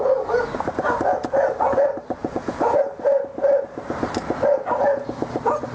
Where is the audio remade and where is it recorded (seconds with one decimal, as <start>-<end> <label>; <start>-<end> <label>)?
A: 0.0-2.2 recorded; 2.2-2.8 remade; 2.8-5.7 recorded